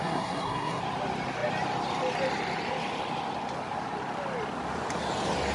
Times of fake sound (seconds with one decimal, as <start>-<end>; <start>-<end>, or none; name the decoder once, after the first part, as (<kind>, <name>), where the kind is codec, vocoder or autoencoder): 0.0-0.8 (codec, SNAC)